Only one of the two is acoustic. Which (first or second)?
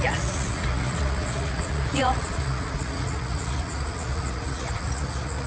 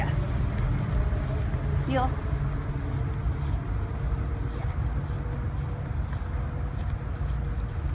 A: second